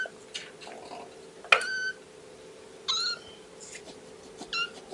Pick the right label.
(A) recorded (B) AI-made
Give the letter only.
A